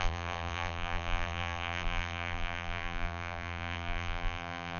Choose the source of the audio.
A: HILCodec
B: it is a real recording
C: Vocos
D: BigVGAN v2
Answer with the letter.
D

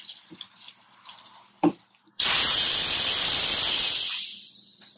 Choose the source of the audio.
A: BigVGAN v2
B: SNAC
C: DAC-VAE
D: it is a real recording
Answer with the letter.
A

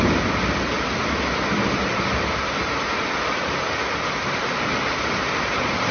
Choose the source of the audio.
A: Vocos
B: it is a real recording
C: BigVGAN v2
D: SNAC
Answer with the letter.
B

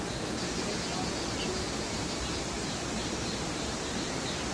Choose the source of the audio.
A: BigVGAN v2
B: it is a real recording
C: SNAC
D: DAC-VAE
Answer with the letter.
A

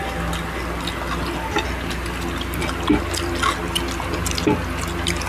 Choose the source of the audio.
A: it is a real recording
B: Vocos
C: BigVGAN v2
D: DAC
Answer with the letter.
A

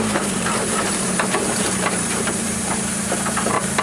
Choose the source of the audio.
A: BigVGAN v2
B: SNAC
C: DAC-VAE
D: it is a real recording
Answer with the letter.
A